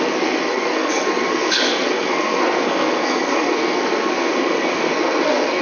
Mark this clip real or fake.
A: fake